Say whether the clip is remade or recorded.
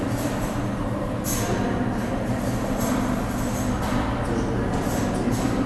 recorded